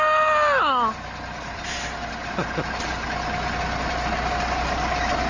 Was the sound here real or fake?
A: real